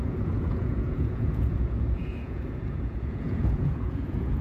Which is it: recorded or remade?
remade